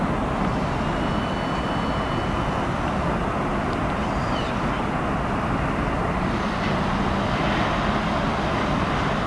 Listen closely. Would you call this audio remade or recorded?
recorded